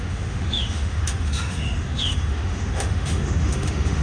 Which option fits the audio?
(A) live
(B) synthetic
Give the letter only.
B